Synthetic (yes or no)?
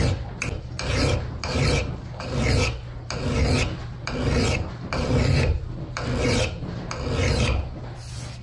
no